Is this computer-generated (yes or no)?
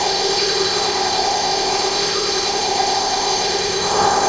yes